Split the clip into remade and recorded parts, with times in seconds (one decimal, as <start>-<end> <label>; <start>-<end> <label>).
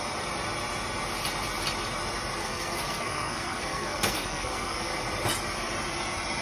0.0-2.4 recorded; 2.4-4.9 remade; 4.9-6.4 recorded